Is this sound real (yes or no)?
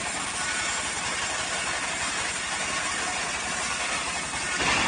yes